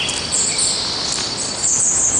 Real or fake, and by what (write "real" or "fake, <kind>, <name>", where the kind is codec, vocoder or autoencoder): real